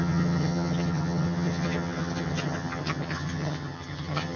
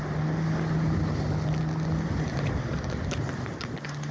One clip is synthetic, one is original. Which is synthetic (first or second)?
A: first